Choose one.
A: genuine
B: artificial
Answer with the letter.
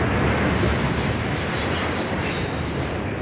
A